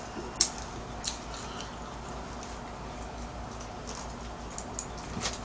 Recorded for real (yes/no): yes